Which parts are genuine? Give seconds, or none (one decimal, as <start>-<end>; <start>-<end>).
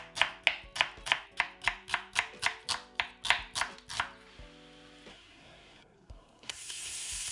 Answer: 0.0-5.1